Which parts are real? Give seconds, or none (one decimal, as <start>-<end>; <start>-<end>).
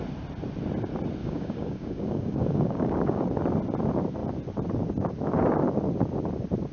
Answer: 0.0-1.2; 3.3-6.7